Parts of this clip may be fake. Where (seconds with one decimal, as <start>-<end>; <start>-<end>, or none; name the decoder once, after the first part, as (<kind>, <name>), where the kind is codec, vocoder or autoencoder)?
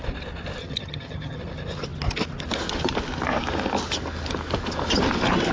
0.6-1.4 (vocoder, HiFi-GAN)